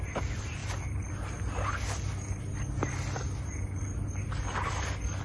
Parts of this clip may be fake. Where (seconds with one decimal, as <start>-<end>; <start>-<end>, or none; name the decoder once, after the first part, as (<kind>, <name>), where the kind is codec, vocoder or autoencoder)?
none